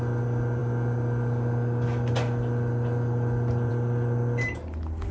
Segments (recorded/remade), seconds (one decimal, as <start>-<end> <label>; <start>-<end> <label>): 0.0-5.1 recorded

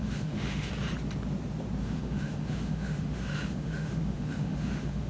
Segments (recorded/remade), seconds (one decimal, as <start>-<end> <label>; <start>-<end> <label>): 0.0-0.7 remade; 0.7-1.8 recorded; 1.8-5.1 remade

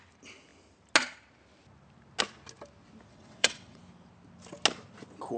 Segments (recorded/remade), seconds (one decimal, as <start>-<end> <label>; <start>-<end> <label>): 0.0-3.1 recorded; 3.1-3.8 remade; 3.8-5.4 recorded

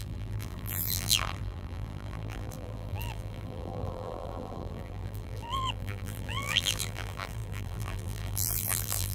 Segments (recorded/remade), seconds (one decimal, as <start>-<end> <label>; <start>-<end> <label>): 0.0-9.1 remade